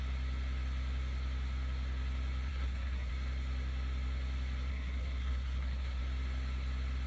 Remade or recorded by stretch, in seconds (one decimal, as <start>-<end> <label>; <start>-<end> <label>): 0.0-2.5 recorded; 2.5-3.1 remade; 3.1-4.7 recorded; 4.7-6.0 remade; 6.0-7.1 recorded